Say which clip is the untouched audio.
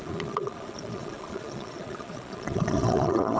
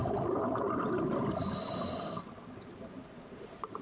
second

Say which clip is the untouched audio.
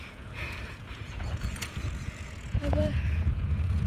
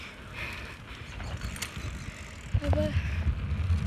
second